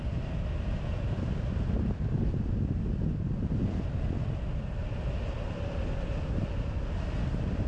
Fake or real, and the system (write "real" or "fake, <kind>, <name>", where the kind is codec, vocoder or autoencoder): real